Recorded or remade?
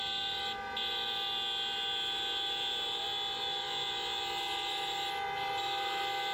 recorded